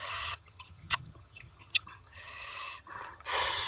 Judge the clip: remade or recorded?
remade